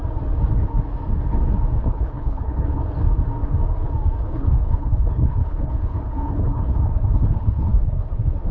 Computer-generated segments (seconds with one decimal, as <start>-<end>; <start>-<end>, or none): 1.8-2.8; 4.2-8.5